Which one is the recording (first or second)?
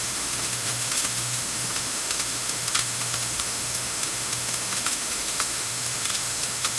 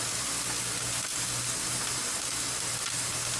second